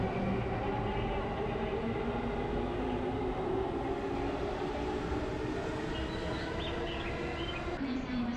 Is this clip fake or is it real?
real